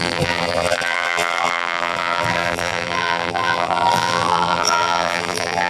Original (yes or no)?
no